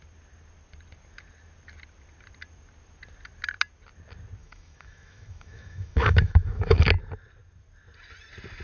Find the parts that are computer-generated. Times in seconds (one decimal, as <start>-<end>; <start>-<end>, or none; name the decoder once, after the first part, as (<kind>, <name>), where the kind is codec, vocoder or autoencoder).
4.4-7.0 (autoencoder, DAC-VAE)